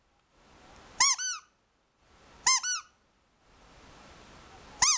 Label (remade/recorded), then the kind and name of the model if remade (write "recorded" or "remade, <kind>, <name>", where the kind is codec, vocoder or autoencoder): recorded